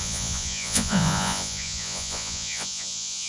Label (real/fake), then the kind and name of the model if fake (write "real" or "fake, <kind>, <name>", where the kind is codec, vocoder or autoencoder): fake, vocoder, Vocos